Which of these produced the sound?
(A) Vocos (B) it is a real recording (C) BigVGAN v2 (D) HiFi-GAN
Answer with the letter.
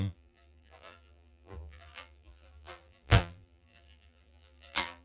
C